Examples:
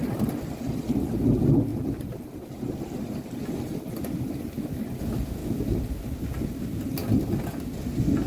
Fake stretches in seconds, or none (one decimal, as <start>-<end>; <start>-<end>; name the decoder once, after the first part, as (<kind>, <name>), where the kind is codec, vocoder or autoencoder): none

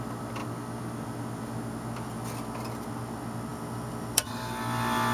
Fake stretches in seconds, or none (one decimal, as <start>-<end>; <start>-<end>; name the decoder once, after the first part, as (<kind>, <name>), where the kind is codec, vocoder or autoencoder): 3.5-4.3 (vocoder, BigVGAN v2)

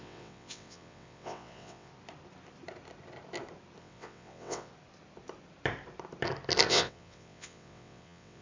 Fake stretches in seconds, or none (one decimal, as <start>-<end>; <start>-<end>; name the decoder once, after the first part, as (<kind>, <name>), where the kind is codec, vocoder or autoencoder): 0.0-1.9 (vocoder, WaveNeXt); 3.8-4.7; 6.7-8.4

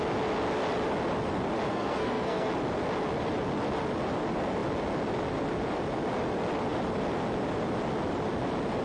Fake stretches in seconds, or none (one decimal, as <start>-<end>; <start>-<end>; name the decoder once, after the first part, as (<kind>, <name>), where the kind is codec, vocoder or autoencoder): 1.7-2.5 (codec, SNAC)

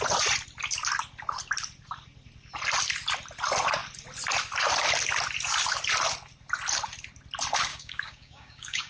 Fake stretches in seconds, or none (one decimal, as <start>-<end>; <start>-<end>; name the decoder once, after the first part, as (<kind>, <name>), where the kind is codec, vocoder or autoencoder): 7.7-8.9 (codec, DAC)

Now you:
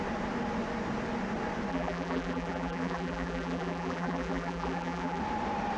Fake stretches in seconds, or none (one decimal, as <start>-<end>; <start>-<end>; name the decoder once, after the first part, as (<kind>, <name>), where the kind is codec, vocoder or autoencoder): 1.7-5.2 (vocoder, BigVGAN v2)